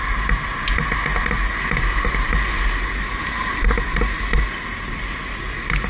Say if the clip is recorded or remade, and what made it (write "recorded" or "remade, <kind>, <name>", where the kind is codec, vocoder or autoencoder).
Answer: recorded